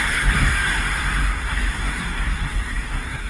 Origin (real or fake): fake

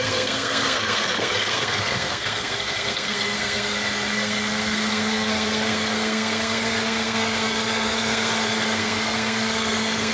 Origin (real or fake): fake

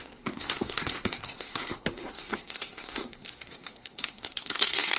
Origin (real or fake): fake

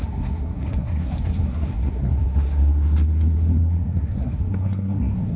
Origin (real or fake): fake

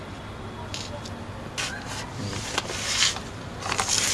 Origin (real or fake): real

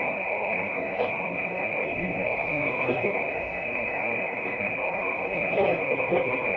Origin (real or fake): fake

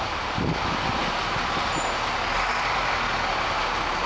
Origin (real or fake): real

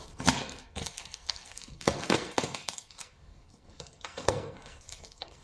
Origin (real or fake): fake